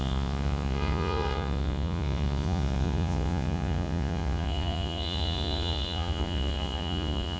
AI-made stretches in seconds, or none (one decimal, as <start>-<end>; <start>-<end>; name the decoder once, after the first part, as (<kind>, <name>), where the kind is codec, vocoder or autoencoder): 0.0-7.4 (vocoder, Vocos)